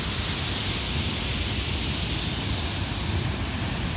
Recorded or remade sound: recorded